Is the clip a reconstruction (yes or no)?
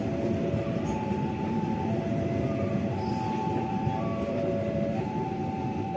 yes